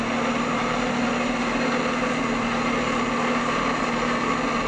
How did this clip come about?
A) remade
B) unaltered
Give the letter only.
B